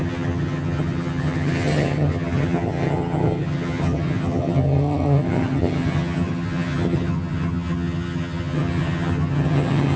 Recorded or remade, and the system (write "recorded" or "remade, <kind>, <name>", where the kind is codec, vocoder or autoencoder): remade, vocoder, HiFi-GAN